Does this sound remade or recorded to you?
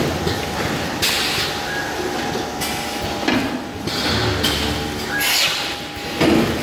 recorded